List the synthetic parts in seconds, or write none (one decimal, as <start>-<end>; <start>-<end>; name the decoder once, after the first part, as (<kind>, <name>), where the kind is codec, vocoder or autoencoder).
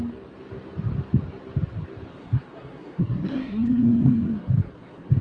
2.1-5.2 (codec, SNAC)